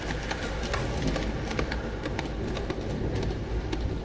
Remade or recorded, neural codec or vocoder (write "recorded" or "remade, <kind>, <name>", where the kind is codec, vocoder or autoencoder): recorded